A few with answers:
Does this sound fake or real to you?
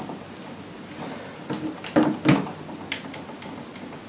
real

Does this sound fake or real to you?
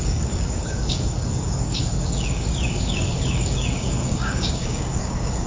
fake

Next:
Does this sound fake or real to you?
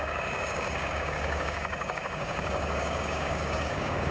fake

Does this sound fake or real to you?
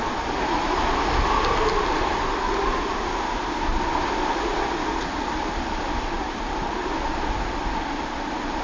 real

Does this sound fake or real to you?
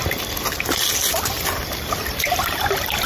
real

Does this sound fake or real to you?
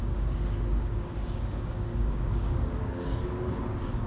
fake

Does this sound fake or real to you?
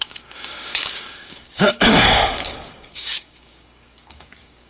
fake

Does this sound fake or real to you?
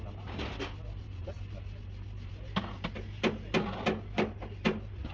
real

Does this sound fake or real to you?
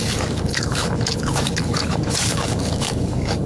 fake